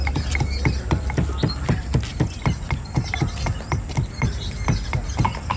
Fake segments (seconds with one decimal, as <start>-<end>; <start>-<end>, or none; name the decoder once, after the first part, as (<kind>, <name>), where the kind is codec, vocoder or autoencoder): none